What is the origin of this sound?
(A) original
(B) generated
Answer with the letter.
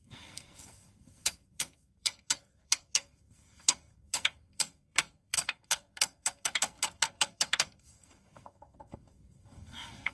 B